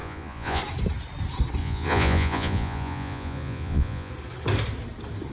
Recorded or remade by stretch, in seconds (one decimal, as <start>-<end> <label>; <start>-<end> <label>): 0.0-0.6 remade; 0.6-1.6 recorded; 1.6-4.1 remade; 4.1-5.3 recorded